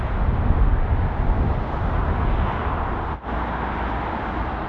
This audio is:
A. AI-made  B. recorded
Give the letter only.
B